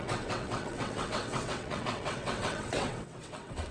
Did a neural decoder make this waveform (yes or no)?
yes